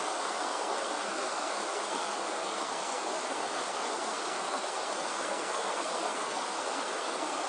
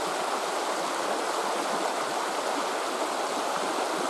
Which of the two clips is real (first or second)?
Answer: second